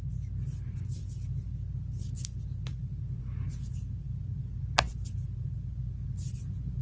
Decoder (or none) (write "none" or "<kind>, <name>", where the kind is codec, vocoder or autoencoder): none